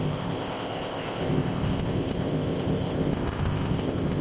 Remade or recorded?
remade